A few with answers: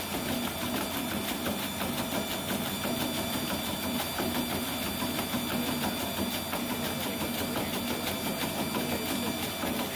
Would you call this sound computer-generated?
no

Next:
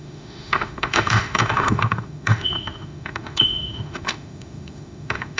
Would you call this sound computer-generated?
yes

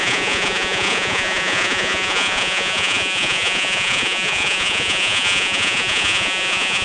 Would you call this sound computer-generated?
yes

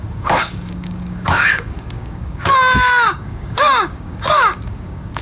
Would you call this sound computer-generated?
yes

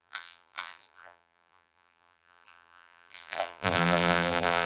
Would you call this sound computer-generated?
yes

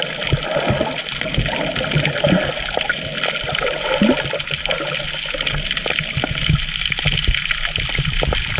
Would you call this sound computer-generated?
no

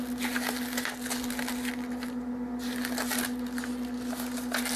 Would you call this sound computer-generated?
no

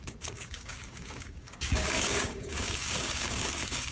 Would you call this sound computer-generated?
yes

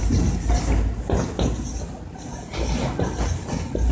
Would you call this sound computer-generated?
no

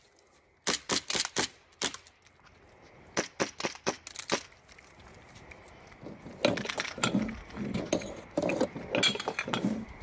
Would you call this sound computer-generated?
no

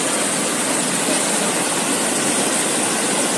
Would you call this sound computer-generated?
no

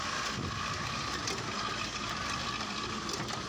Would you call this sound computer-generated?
no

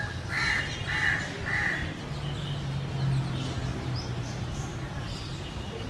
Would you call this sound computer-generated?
no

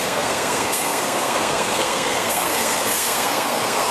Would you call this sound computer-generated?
yes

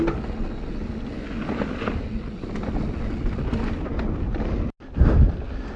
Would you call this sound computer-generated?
no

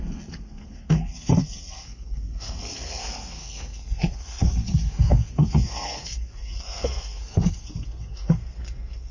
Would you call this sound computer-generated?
yes